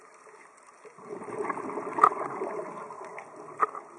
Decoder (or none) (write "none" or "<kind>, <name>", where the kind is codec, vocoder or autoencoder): none